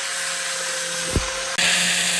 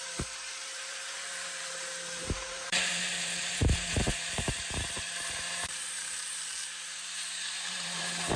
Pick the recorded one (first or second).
first